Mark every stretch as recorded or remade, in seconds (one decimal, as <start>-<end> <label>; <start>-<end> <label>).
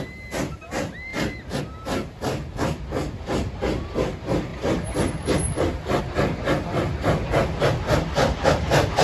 0.0-1.1 recorded; 1.1-1.6 remade; 1.6-9.0 recorded